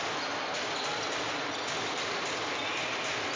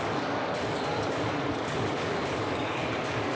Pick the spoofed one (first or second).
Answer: second